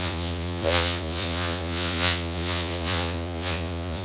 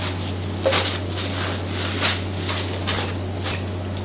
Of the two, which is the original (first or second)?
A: second